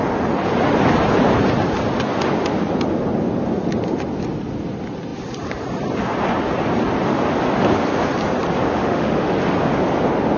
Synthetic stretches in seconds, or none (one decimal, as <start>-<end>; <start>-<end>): 8.7-9.3